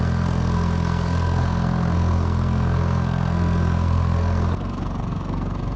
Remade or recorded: remade